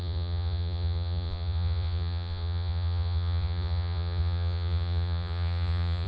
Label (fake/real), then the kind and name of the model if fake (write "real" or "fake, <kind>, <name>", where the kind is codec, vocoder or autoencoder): fake, vocoder, Vocos